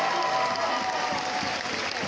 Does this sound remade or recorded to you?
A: recorded